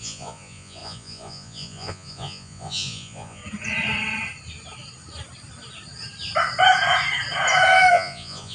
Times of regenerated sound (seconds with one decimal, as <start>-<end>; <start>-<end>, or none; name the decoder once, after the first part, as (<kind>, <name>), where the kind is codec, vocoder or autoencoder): 0.0-3.4 (vocoder, Vocos); 7.9-8.5